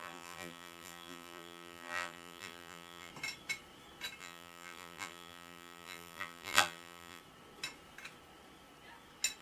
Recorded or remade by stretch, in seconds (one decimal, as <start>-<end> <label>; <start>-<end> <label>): 0.0-3.1 remade; 3.1-4.2 recorded; 4.2-7.2 remade; 7.2-9.4 recorded